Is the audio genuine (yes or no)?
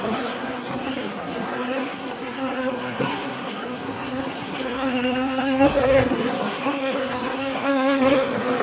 no